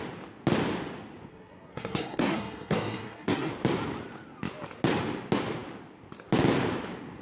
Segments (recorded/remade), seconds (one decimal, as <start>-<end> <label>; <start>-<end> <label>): 0.0-1.3 recorded; 1.3-3.5 remade; 3.5-7.2 recorded

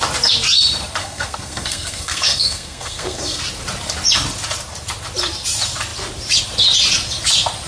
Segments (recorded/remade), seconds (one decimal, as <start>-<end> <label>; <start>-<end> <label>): 0.0-1.0 recorded; 1.0-3.4 remade; 3.4-7.7 recorded

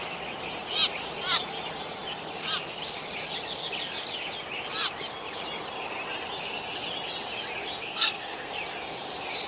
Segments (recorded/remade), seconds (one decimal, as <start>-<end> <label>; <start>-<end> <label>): 0.0-7.8 recorded; 7.8-8.5 remade; 8.5-9.5 recorded

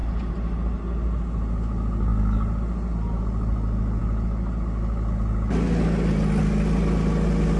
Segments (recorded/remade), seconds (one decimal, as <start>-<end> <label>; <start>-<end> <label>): 0.0-7.6 recorded